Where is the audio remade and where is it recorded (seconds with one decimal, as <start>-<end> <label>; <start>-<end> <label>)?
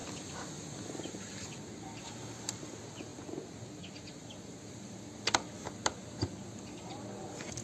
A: 0.0-7.6 recorded